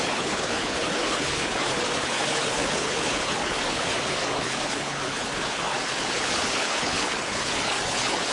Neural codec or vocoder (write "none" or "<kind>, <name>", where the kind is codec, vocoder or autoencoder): codec, HILCodec